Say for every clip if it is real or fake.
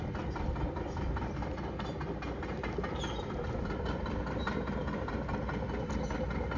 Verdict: real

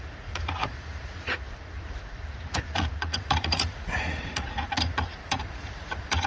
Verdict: fake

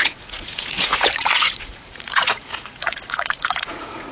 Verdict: fake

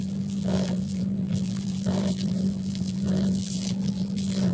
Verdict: fake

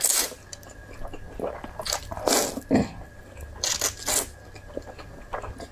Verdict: real